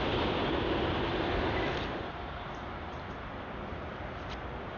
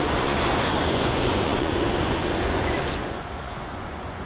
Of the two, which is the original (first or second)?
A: first